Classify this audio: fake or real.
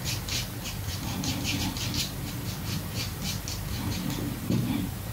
real